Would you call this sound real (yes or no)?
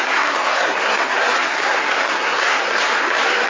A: no